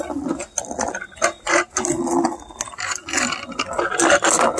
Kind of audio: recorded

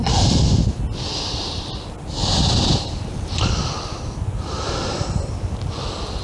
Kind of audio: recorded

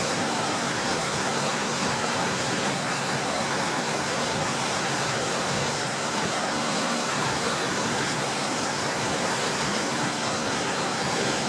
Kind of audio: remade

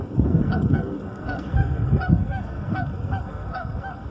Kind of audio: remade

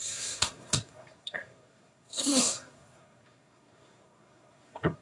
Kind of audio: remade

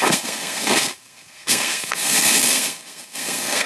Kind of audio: remade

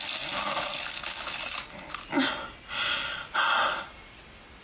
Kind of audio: recorded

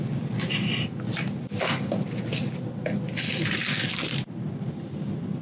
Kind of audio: recorded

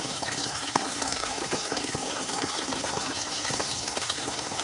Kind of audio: remade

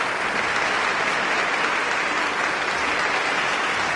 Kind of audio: recorded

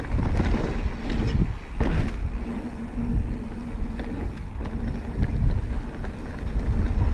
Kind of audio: recorded